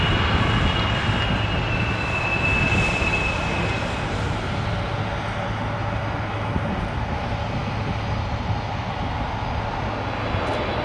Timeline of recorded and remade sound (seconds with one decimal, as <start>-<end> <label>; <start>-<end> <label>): 0.0-10.8 recorded